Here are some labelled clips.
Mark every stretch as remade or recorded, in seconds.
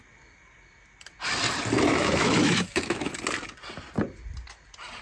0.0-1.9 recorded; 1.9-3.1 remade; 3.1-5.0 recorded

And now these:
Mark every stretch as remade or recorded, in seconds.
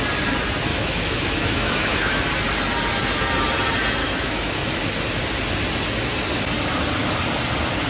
0.0-0.7 recorded; 0.7-2.2 remade; 2.2-4.0 recorded; 4.0-4.8 remade; 4.8-7.9 recorded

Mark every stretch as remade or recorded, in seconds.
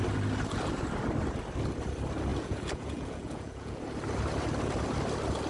0.0-2.3 recorded; 2.3-3.8 remade; 3.8-5.5 recorded